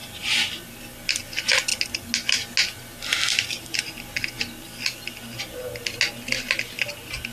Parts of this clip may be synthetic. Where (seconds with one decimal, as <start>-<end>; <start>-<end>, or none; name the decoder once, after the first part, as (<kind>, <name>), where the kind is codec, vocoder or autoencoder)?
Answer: none